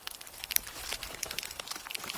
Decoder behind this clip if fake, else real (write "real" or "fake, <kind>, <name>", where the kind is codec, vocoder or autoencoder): fake, vocoder, BigVGAN v2